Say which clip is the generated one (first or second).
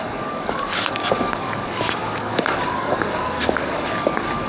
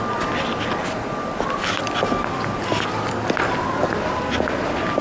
first